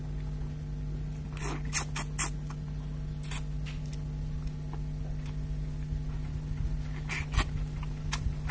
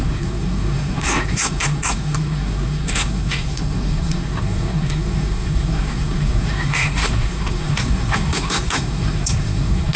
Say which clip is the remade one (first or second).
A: second